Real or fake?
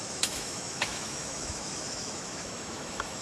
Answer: fake